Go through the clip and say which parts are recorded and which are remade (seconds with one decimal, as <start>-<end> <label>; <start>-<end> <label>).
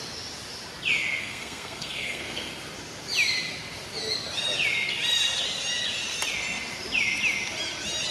0.0-1.2 recorded; 1.2-2.5 remade; 2.5-8.1 recorded